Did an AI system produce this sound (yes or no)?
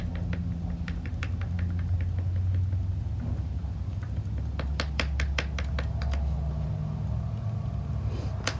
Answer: no